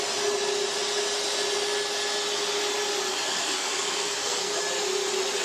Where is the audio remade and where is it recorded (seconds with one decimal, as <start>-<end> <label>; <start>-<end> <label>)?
0.0-3.3 recorded; 3.3-4.6 remade; 4.6-5.4 recorded